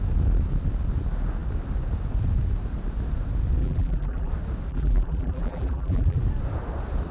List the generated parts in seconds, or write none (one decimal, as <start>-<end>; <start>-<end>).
3.6-4.3; 4.7-6.2